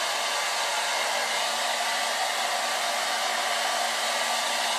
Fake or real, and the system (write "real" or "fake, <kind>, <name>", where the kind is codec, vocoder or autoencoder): real